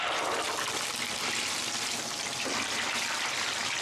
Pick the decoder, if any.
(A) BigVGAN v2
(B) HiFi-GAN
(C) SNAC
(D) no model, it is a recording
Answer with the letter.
A